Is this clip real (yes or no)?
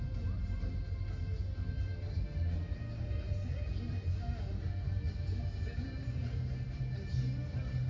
yes